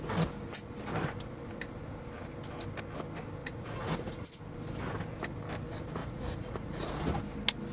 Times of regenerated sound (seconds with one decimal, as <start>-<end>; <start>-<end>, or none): 3.4-4.4; 6.0-6.9